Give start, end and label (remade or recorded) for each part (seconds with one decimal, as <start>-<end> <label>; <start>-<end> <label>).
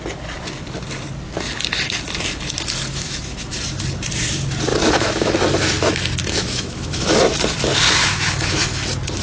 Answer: 0.0-2.9 recorded; 2.9-3.5 remade; 3.5-4.7 recorded; 4.7-5.3 remade; 5.3-6.2 recorded; 6.2-7.1 remade; 7.1-8.0 recorded; 8.0-8.6 remade; 8.6-9.2 recorded